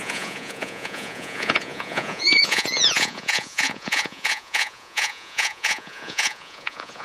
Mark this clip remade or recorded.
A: remade